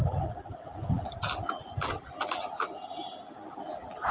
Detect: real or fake fake